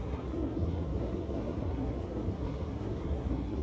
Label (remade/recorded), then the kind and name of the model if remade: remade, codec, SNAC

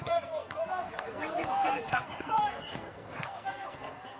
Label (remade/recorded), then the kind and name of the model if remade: remade, codec, SNAC